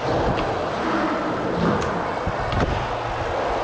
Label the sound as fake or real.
real